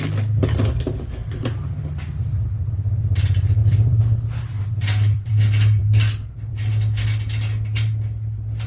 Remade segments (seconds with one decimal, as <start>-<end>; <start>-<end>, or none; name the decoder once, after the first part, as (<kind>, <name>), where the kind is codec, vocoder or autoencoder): 3.6-5.3 (vocoder, BigVGAN v2)

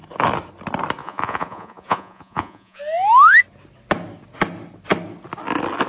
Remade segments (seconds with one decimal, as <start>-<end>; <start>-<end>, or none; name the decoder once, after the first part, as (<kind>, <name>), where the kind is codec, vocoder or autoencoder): 1.0-2.8 (vocoder, Vocos)

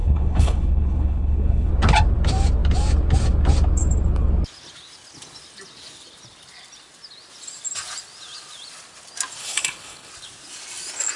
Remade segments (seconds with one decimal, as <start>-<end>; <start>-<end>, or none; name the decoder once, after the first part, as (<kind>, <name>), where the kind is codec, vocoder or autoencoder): 0.0-1.7 (codec, HILCodec); 9.4-10.1